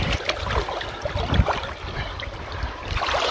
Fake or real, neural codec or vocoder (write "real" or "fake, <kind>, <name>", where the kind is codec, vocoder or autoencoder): fake, vocoder, BigVGAN v2